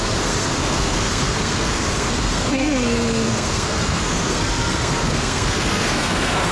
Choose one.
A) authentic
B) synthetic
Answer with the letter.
B